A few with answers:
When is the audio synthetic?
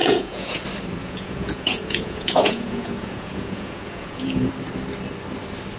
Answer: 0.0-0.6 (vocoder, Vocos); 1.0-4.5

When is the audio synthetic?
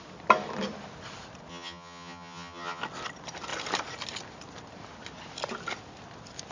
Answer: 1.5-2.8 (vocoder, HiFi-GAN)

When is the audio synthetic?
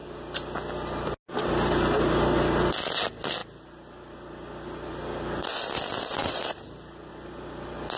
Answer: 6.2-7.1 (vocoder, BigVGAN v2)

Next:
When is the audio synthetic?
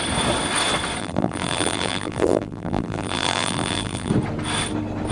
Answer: 1.0-4.1 (vocoder, BigVGAN v2)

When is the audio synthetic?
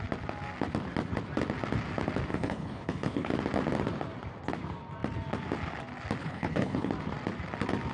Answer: 2.3-3.3 (codec, HILCodec); 6.2-6.9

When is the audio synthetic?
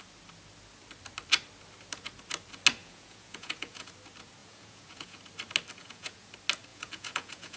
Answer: 2.8-3.9 (vocoder, Vocos); 4.4-5.2; 5.8-6.3; 6.7-7.6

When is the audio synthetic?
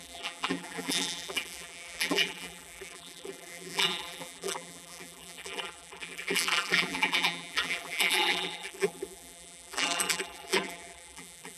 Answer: 0.0-11.6 (vocoder, BigVGAN v2)